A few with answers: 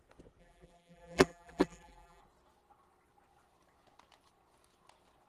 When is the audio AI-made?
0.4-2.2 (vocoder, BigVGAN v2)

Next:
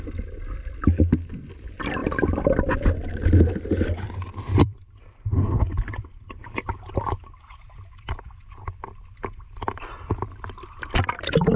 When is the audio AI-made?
2.0-5.3 (vocoder, BigVGAN v2)

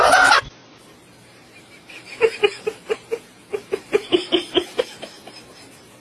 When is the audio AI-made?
0.6-3.2 (vocoder, BigVGAN v2); 3.6-4.6

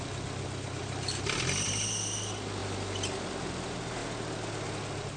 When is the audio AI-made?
0.8-1.4 (vocoder, BigVGAN v2)

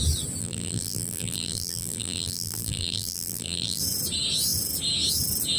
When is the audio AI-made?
0.4-3.8 (vocoder, BigVGAN v2)

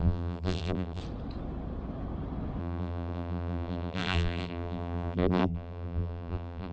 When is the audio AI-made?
0.0-1.0 (vocoder, BigVGAN v2); 2.6-6.7